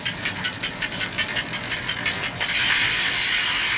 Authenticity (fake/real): real